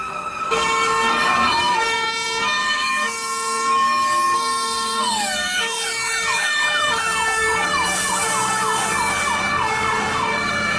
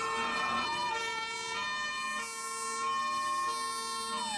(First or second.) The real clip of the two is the second